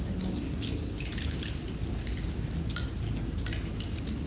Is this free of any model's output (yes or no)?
yes